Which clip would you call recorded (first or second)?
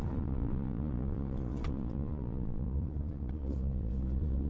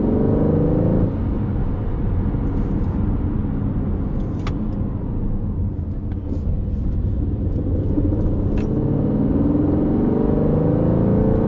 second